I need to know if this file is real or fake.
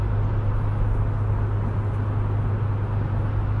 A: real